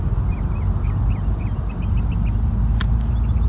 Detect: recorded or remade recorded